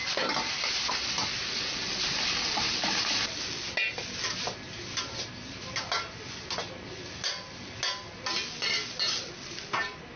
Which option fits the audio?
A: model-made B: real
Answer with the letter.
B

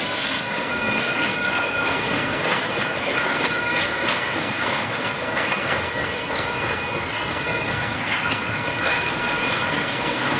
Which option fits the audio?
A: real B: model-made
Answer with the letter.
B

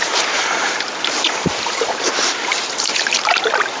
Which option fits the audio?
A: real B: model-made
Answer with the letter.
B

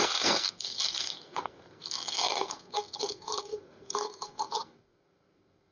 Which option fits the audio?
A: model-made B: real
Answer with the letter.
A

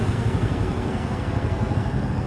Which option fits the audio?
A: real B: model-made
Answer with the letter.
B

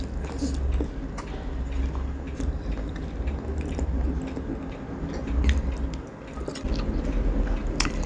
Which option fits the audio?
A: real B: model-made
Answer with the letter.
A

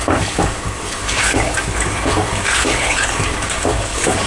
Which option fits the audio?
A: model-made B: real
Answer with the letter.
A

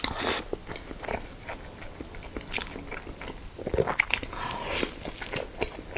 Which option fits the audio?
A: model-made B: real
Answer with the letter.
B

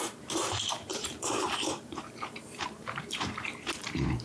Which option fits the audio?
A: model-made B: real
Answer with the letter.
A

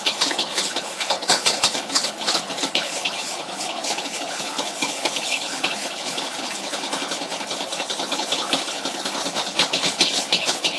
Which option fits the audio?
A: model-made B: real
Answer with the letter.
A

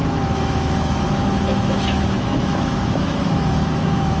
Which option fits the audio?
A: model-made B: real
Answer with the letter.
A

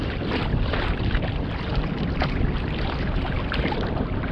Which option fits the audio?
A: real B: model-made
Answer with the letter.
A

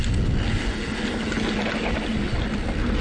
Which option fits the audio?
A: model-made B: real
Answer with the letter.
B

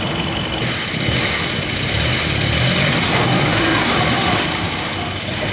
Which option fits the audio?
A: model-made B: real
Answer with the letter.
B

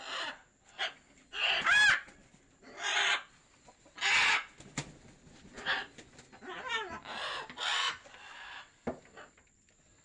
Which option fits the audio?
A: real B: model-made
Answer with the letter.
A